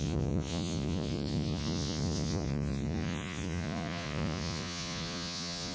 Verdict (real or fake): fake